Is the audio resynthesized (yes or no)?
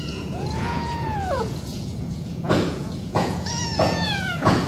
yes